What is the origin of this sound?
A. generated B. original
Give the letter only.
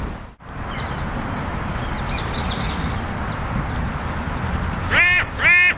B